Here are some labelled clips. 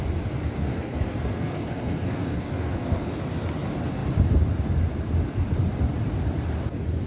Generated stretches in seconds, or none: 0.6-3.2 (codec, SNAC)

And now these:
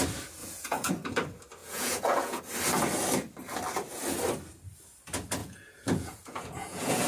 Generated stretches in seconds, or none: 0.4-0.9 (vocoder, Vocos); 1.6-2.4; 5.4-7.1

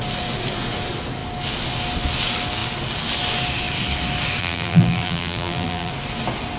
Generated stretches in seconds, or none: 4.4-5.9 (vocoder, BigVGAN v2)

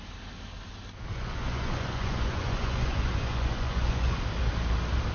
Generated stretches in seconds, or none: 1.1-4.2 (vocoder, Vocos)

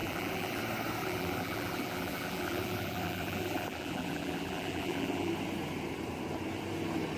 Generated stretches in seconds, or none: 0.0-0.6 (vocoder, BigVGAN v2); 1.0-5.3

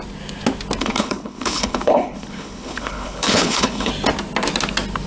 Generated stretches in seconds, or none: 0.8-3.9 (codec, HILCodec)

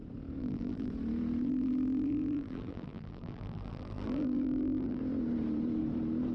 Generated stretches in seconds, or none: 0.4-0.9 (vocoder, BigVGAN v2); 1.4-5.0